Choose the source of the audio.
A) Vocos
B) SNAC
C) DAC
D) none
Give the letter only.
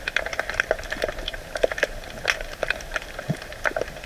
D